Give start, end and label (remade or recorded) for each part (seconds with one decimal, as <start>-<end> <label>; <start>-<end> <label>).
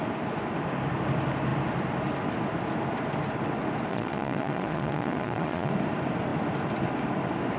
0.0-3.9 recorded; 3.9-5.7 remade; 5.7-7.6 recorded